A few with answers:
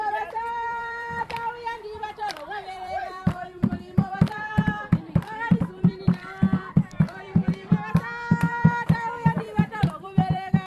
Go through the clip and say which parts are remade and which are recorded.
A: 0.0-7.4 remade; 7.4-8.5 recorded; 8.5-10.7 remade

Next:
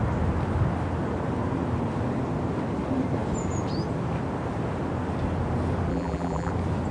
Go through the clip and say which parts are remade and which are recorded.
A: 0.0-5.9 recorded; 5.9-6.5 remade; 6.5-6.9 recorded

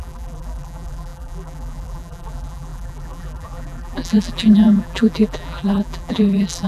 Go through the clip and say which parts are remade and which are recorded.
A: 0.0-6.7 remade

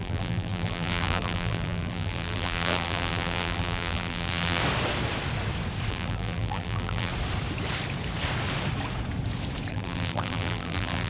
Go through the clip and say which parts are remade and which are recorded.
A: 0.0-4.6 remade; 4.6-5.9 recorded; 5.9-7.1 remade; 7.1-9.7 recorded; 9.7-11.1 remade

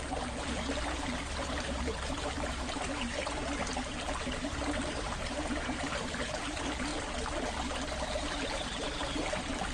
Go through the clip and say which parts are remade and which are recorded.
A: 0.0-6.9 remade; 6.9-7.9 recorded; 7.9-9.7 remade

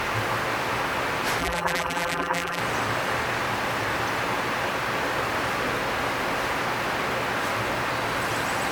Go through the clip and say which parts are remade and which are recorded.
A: 0.0-1.4 recorded; 1.4-2.6 remade; 2.6-8.7 recorded

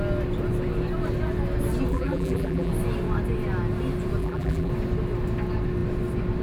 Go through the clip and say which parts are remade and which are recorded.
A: 0.0-1.9 recorded; 1.9-2.7 remade; 2.7-4.2 recorded; 4.2-4.7 remade; 4.7-6.4 recorded

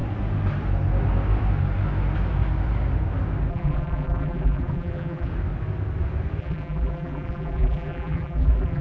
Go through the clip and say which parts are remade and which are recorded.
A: 0.0-3.5 recorded; 3.5-5.3 remade; 5.3-6.4 recorded; 6.4-8.8 remade